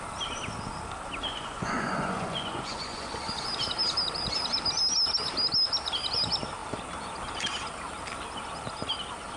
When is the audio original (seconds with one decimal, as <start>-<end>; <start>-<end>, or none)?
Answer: 0.0-1.3; 3.1-9.4